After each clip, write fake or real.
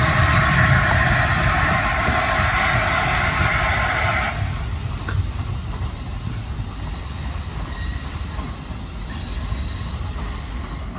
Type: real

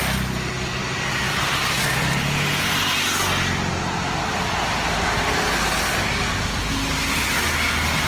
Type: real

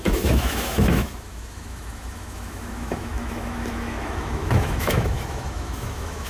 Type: fake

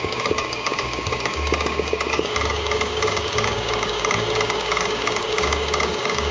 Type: fake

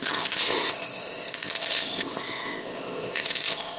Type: fake